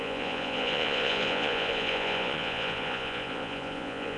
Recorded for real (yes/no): no